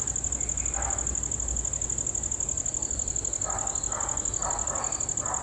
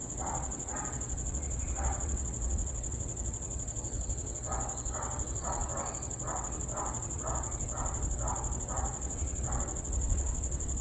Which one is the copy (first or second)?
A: second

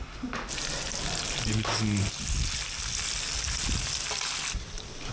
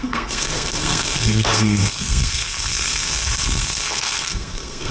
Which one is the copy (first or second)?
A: second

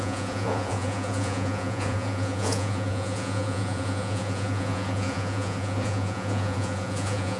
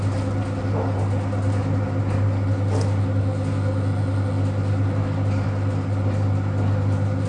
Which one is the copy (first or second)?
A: first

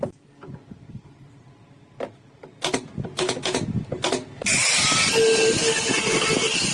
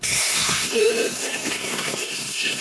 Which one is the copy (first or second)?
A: second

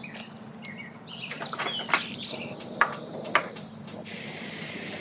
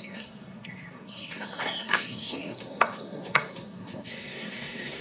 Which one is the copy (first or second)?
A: second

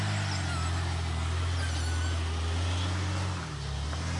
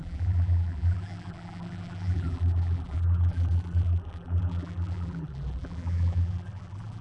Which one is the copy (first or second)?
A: second